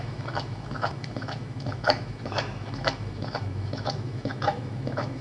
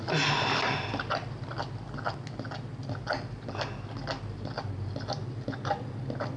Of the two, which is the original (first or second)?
second